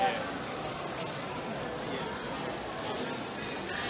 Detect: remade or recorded recorded